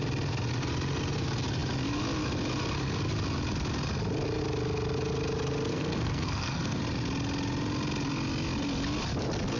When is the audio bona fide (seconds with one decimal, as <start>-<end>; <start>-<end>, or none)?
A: 0.0-5.7; 6.8-9.6

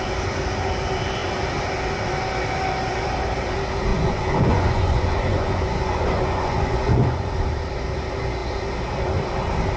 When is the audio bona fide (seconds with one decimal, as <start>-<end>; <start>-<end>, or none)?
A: 0.0-3.9; 7.3-9.8

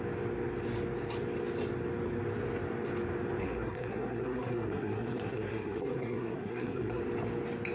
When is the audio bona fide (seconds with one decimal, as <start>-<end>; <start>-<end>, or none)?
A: 0.0-3.4; 7.0-7.7

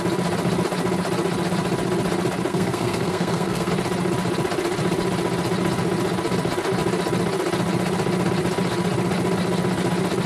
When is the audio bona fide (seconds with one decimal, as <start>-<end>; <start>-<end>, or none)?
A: 0.0-2.5; 3.7-10.3

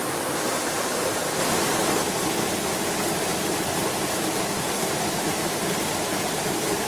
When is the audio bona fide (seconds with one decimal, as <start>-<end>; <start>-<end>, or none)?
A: 0.0-6.9

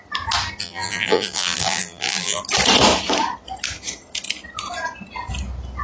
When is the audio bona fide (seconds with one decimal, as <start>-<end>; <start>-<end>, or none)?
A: 0.0-0.6; 2.4-5.8

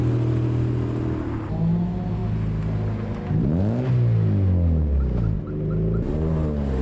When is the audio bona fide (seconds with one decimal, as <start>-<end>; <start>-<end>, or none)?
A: 0.0-6.8